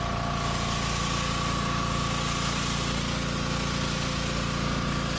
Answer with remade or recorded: recorded